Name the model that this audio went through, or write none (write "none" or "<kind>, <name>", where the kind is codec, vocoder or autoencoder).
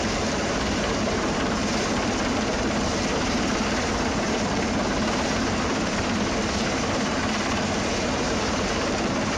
vocoder, BigVGAN v2